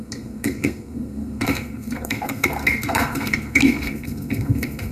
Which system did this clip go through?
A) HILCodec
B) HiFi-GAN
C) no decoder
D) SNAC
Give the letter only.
D